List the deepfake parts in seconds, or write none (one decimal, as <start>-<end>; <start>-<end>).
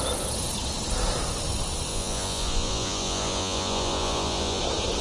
1.9-4.6